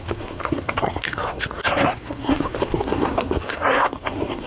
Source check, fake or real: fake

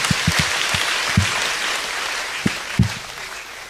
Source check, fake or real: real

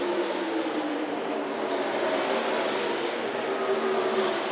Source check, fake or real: real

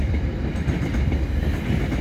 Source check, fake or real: real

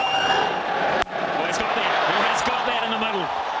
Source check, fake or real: real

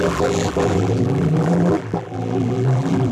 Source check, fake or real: fake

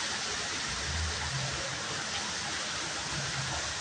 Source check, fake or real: real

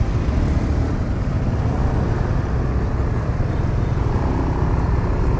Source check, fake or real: real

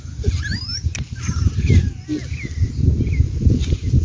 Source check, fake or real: real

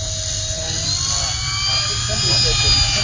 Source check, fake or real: real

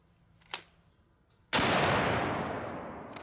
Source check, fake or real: real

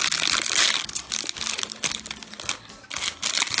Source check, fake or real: real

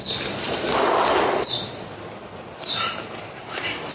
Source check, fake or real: real